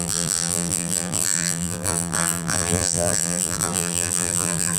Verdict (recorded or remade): remade